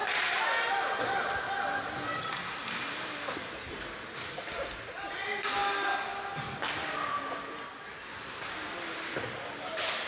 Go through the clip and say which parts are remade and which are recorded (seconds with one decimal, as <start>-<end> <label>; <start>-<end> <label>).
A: 0.0-10.1 recorded